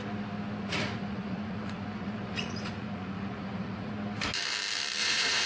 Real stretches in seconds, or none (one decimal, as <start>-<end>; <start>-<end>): 0.0-0.6; 3.9-5.0